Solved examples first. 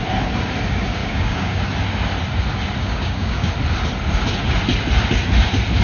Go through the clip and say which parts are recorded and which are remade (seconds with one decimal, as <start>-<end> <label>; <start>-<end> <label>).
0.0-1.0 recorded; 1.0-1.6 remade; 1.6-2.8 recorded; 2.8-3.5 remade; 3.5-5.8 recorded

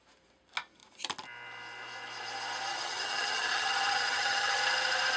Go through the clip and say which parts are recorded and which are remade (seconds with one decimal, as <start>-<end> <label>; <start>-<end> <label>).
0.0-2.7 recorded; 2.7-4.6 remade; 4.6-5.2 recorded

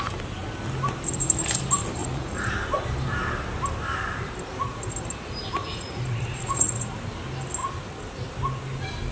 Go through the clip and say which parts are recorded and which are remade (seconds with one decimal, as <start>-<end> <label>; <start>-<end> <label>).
0.0-2.0 recorded; 2.0-2.5 remade; 2.5-5.6 recorded; 5.6-6.9 remade; 6.9-9.1 recorded

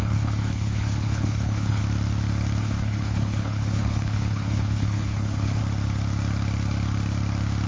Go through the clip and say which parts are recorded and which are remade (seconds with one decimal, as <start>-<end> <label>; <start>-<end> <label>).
0.0-1.8 remade; 1.8-2.6 recorded; 2.6-5.6 remade; 5.6-7.7 recorded

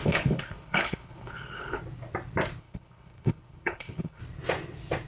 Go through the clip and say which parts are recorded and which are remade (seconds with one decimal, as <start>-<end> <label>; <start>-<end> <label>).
0.0-1.8 remade; 1.8-2.6 recorded; 2.6-4.2 remade; 4.2-5.1 recorded